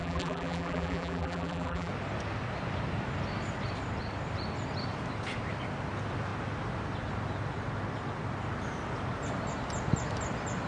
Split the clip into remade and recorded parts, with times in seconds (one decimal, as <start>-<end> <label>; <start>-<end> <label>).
0.0-1.9 remade; 1.9-10.7 recorded